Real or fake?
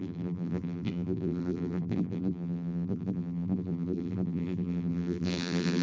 fake